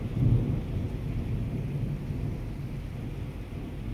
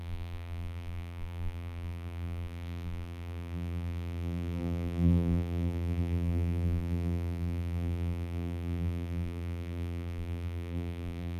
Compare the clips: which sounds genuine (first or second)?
first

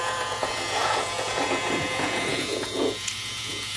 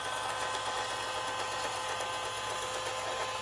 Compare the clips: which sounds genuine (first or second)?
second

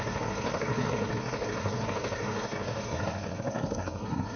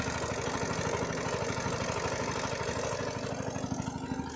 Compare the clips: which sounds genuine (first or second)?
second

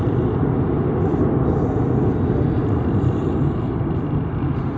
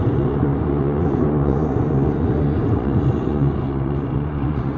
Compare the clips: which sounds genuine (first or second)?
first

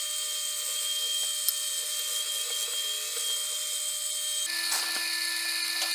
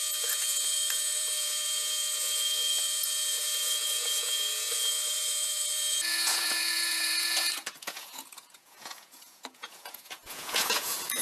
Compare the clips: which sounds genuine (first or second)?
first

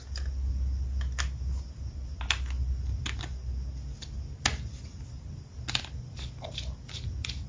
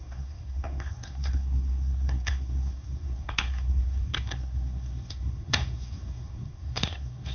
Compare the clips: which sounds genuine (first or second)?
first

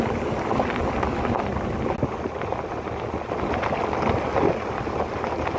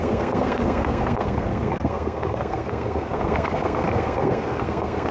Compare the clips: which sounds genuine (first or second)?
first